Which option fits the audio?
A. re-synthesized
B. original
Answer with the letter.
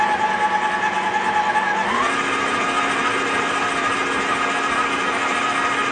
B